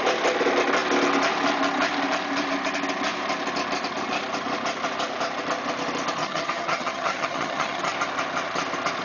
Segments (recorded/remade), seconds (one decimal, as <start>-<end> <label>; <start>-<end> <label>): 0.0-6.2 recorded; 6.2-7.8 remade; 7.8-9.0 recorded